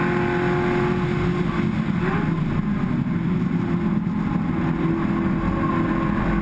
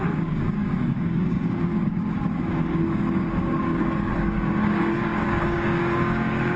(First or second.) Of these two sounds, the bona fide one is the first